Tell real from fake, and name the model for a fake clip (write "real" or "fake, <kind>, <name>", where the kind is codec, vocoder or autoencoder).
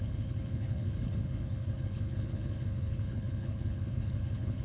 fake, codec, HILCodec